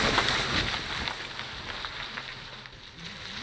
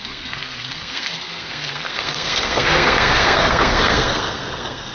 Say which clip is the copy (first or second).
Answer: second